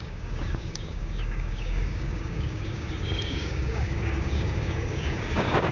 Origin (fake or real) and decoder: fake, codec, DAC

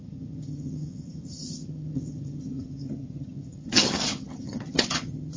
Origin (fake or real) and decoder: fake, vocoder, HiFi-GAN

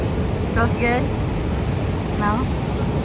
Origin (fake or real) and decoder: real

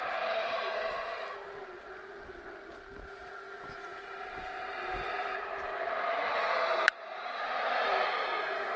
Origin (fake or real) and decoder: real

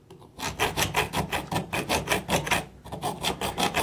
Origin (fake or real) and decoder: real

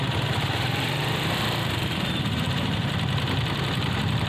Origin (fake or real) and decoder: fake, vocoder, BigVGAN v2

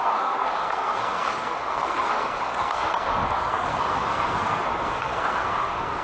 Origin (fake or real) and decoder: fake, codec, SNAC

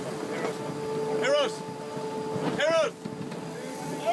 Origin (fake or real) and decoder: real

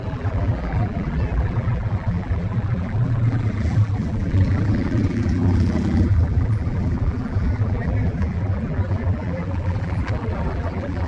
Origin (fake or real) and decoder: fake, vocoder, BigVGAN v2